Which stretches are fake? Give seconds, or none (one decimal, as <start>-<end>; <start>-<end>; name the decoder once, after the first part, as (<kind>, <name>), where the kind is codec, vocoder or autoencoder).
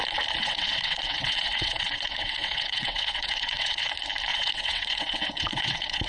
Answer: 0.4-3.9 (vocoder, WaveNeXt); 4.3-6.1